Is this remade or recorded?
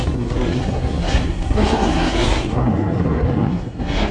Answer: remade